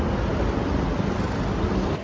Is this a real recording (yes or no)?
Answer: yes